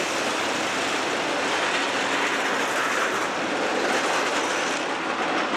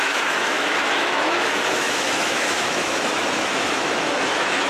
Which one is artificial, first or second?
second